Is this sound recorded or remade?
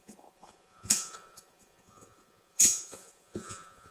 remade